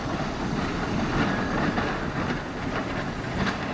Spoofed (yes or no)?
no